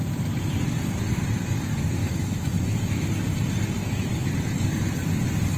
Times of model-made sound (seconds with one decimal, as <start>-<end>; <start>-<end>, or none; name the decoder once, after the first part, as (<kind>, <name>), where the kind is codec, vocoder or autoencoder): 2.0-3.1 (autoencoder, DAC-VAE); 3.8-4.3